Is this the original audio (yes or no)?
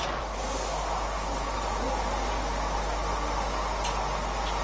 yes